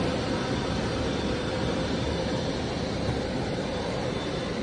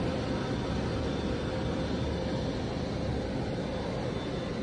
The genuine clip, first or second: second